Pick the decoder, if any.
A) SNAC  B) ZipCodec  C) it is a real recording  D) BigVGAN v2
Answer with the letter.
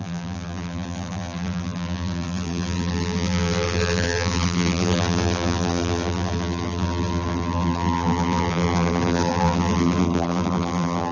D